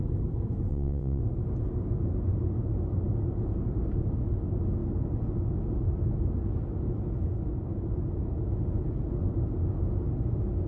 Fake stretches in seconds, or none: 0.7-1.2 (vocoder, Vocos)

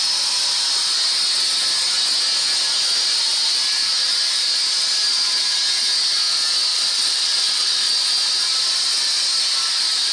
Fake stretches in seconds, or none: 6.7-7.9 (vocoder, WaveNeXt)